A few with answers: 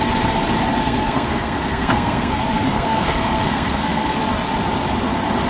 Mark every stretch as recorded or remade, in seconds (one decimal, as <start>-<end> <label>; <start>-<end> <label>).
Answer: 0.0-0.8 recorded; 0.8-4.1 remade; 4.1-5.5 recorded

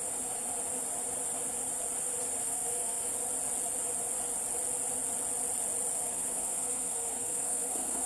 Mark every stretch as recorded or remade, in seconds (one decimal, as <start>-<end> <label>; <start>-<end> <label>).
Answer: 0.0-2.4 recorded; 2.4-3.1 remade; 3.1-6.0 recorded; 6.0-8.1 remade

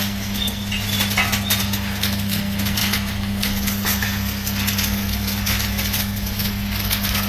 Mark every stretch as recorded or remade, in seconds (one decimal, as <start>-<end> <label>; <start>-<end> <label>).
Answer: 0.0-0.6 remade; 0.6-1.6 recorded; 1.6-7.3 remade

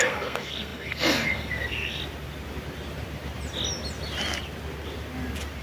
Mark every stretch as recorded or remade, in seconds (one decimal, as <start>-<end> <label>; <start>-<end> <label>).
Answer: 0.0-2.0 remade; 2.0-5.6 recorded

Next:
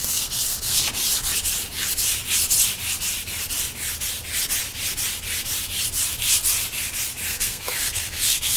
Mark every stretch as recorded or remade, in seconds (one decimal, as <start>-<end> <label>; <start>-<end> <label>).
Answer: 0.0-0.8 remade; 0.8-7.3 recorded; 7.3-8.6 remade

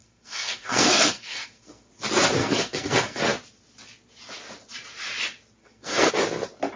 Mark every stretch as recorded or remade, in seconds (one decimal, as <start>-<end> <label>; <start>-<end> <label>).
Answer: 0.0-1.9 remade; 1.9-2.4 recorded; 2.4-3.2 remade; 3.2-5.6 recorded; 5.6-6.1 remade; 6.1-6.8 recorded

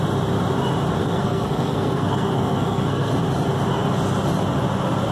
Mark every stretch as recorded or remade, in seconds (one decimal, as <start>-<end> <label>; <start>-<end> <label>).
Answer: 0.0-1.0 recorded; 1.0-3.1 remade; 3.1-5.1 recorded

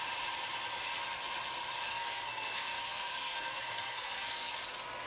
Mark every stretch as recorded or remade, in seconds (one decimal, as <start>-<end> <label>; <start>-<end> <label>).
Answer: 0.0-1.9 recorded; 1.9-4.5 remade; 4.5-5.1 recorded